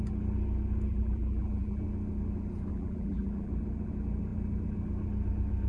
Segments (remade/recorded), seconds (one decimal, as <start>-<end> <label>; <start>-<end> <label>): 0.0-0.9 recorded; 0.9-1.8 remade; 1.8-2.7 recorded; 2.7-3.5 remade; 3.5-5.7 recorded